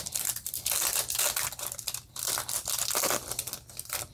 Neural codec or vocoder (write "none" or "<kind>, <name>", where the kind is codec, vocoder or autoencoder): none